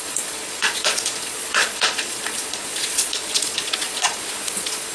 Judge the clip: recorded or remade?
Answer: remade